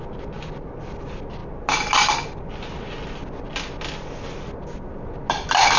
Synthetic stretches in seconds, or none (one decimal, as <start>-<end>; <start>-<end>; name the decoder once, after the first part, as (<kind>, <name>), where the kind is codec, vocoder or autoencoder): none